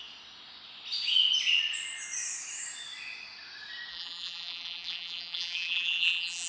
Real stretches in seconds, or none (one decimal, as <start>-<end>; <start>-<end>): 0.0-3.9